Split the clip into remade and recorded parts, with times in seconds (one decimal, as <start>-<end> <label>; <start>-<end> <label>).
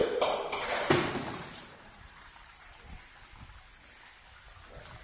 0.0-3.0 remade; 3.0-5.0 recorded